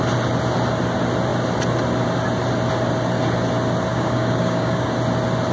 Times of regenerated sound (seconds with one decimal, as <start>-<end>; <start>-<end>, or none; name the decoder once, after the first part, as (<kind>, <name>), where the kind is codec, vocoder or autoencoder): 3.9-4.9 (codec, DAC)